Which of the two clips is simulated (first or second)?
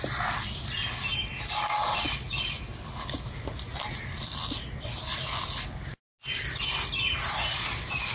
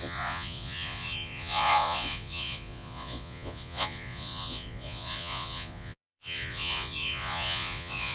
second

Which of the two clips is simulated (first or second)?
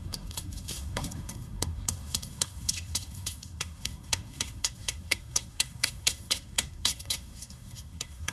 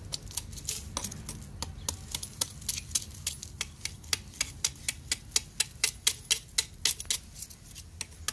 first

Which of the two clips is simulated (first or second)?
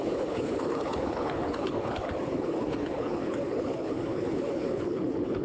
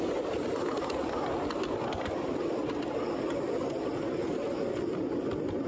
first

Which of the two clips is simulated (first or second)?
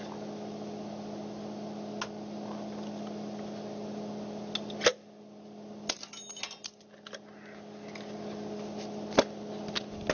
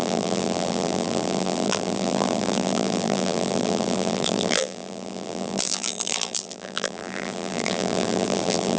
second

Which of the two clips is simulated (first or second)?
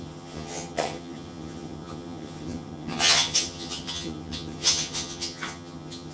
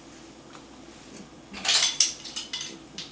first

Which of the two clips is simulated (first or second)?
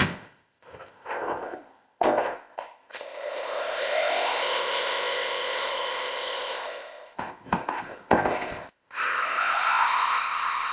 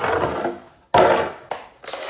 first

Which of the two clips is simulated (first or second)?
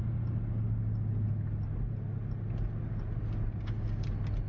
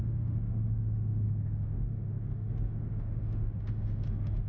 second